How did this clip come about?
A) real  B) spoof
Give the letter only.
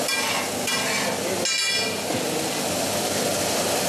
A